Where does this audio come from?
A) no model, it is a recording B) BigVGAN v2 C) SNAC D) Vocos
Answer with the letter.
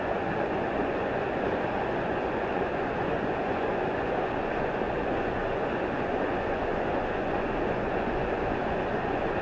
D